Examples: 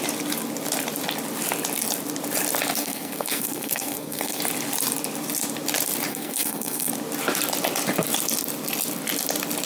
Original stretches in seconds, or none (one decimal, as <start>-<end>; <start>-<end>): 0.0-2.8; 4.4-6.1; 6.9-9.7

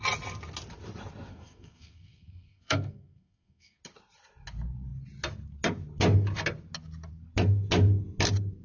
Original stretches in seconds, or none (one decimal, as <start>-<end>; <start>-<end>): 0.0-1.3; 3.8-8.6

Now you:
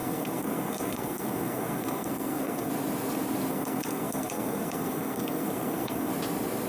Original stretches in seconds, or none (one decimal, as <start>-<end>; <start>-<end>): 2.7-3.5; 6.1-6.7

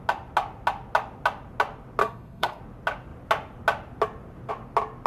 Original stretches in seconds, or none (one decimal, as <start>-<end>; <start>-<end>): 0.0-2.0; 2.6-5.1